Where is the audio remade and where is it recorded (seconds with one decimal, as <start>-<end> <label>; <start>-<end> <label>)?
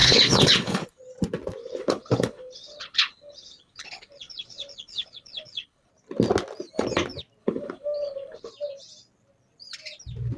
0.0-1.0 remade; 1.0-1.6 recorded; 1.6-5.9 remade; 5.9-7.4 recorded; 7.4-8.5 remade; 8.5-10.4 recorded